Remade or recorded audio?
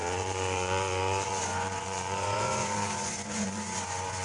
remade